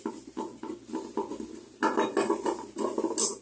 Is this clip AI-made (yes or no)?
no